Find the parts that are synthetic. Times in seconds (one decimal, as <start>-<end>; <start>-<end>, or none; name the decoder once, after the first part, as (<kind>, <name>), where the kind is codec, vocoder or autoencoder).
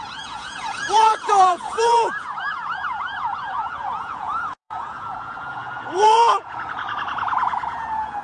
0.0-8.2 (vocoder, Vocos)